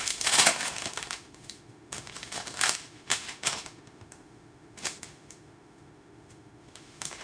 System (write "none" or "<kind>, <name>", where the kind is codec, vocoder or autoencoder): autoencoder, DAC-VAE